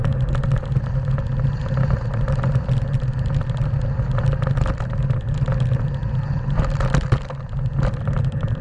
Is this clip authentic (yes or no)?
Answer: yes